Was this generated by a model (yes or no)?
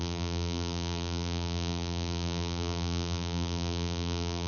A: yes